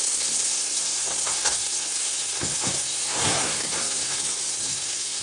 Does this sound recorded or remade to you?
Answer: remade